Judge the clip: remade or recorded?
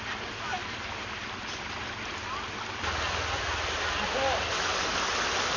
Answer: recorded